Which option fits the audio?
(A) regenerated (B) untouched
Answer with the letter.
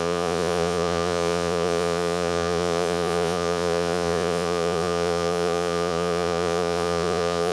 A